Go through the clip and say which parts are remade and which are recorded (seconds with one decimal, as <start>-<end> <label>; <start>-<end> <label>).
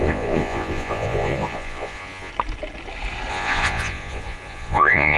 0.0-2.3 remade; 2.3-3.3 recorded; 3.3-5.2 remade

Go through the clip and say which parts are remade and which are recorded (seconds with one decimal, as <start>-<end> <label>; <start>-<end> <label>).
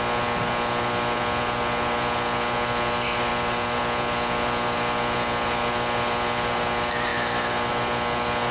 0.0-8.5 recorded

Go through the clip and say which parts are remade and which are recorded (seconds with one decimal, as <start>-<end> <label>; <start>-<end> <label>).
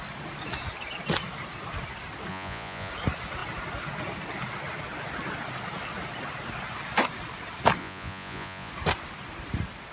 0.0-2.3 recorded; 2.3-2.9 remade; 2.9-7.8 recorded; 7.8-8.7 remade; 8.7-9.9 recorded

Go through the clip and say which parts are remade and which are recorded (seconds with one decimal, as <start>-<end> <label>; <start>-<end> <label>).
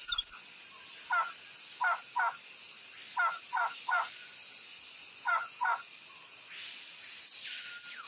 0.0-3.5 recorded; 3.5-5.9 remade; 5.9-8.1 recorded